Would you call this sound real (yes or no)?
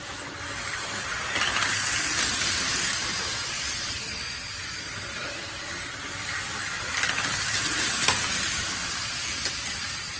yes